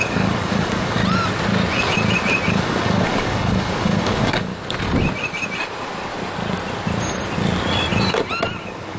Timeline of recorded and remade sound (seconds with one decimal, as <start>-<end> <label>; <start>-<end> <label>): 0.0-1.0 remade; 1.0-2.5 recorded; 2.5-4.5 remade; 4.5-8.6 recorded; 8.6-9.0 remade